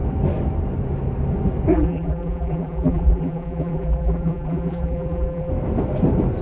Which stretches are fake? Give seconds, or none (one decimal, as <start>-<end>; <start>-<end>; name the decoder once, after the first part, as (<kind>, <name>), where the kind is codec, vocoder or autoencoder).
1.7-5.5 (vocoder, BigVGAN v2)

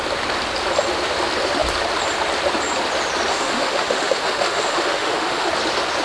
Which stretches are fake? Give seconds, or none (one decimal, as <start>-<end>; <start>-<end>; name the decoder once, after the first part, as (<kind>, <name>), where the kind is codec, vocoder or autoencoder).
3.3-5.5 (autoencoder, DAC-VAE)

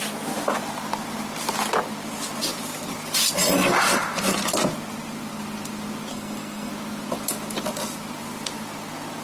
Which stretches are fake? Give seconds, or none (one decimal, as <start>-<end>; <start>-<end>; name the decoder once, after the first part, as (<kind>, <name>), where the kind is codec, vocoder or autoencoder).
6.1-6.7 (codec, SNAC)

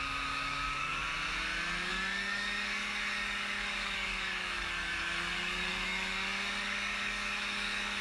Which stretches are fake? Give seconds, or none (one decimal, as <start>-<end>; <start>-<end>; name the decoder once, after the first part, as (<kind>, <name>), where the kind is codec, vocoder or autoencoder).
0.0-1.0 (codec, DAC); 1.9-8.0

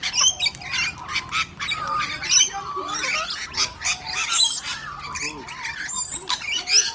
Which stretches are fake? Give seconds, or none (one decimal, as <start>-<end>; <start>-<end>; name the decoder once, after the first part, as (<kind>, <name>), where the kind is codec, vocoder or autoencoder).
none

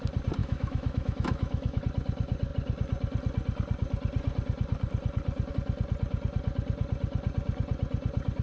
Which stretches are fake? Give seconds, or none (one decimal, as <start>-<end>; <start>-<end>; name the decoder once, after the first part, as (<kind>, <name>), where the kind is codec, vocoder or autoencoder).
0.4-1.8 (autoencoder, DAC-VAE)

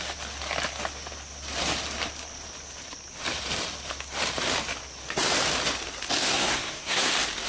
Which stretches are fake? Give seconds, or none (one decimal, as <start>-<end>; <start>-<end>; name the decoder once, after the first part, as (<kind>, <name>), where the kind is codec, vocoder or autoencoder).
6.2-7.1 (codec, SNAC)